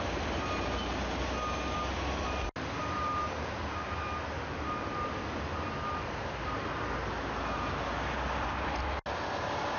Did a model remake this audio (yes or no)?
no